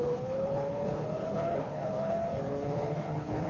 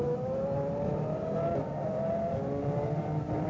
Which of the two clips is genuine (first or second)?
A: second